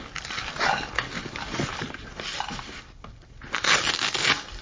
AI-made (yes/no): no